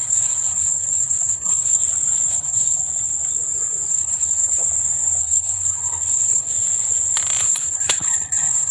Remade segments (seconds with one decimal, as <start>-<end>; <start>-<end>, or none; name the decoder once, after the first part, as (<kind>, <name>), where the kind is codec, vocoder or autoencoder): 0.0-1.8 (codec, HILCodec); 2.3-2.8; 3.9-4.6; 5.2-6.5; 7.4-8.7